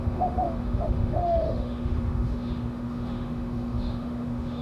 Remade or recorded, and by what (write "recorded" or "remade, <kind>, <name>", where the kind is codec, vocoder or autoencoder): remade, autoencoder, DAC-VAE